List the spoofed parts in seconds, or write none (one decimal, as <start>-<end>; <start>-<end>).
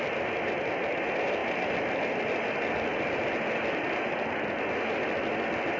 none